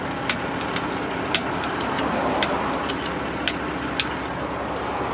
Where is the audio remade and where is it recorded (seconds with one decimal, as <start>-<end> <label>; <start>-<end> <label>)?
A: 0.0-5.1 recorded